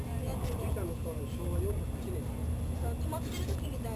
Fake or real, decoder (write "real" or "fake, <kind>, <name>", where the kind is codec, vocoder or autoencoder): real